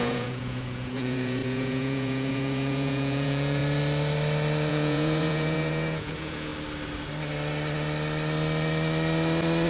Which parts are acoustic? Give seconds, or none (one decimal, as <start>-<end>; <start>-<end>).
3.6-4.7; 6.5-9.7